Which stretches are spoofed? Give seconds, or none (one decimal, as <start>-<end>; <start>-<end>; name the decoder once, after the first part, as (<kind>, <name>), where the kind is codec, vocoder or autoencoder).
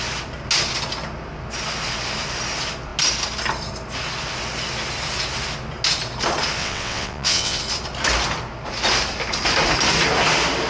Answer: 6.6-7.6 (vocoder, WaveNeXt)